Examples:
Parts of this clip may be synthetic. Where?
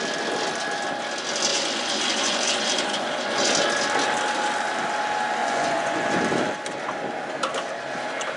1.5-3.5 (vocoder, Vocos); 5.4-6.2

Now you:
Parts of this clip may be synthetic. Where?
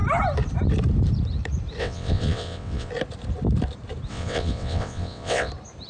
1.8-2.9 (vocoder, WaveNeXt); 4.1-5.5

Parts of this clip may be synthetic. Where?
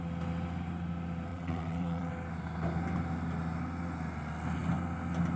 1.3-2.1 (vocoder, WaveNeXt)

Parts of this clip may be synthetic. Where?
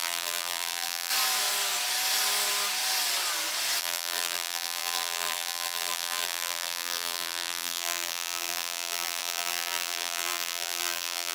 0.0-1.1 (vocoder, BigVGAN v2); 3.8-11.3